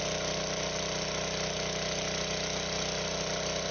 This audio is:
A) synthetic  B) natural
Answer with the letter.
B